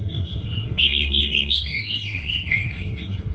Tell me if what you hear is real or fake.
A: fake